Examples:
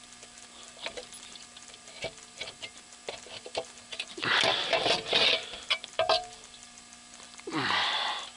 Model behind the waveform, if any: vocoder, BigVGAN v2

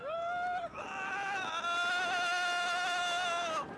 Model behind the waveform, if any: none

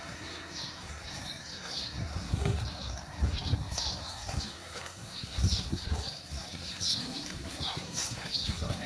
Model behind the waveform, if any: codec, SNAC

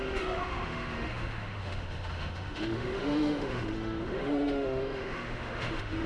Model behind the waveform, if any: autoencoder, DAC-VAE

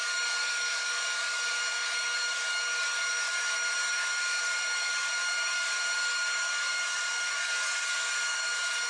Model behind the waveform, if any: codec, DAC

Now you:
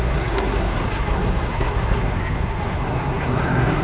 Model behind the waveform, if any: codec, SNAC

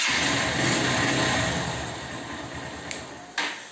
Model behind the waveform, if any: none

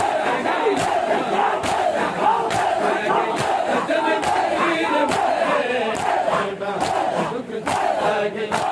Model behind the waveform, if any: none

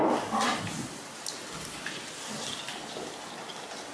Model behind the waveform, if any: none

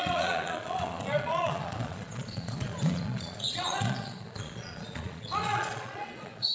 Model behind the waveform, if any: vocoder, Vocos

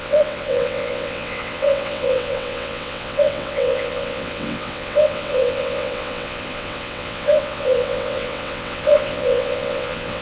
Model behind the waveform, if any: vocoder, WaveNeXt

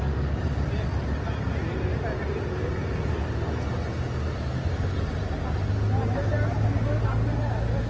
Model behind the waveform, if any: none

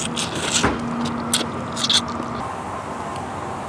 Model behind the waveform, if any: none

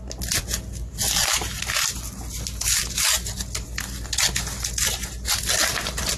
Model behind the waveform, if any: none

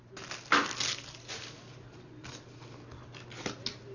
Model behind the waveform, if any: none